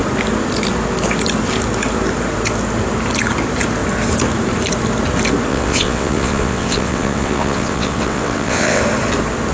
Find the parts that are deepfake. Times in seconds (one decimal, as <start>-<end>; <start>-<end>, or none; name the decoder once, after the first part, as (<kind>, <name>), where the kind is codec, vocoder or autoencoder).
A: 5.5-8.8 (vocoder, WaveNeXt)